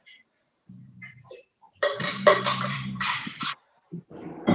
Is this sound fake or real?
fake